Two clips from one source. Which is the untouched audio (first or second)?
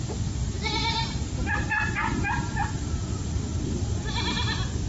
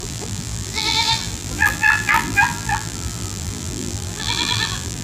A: first